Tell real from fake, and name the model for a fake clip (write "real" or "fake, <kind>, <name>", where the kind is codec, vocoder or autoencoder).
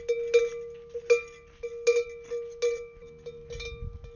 real